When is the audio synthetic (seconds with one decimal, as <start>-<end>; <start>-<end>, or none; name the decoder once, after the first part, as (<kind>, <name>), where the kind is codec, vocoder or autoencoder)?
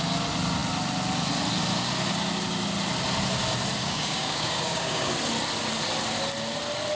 3.8-5.1 (codec, DAC)